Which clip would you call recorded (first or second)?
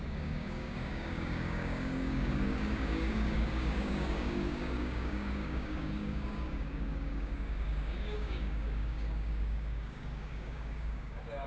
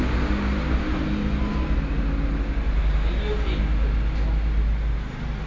second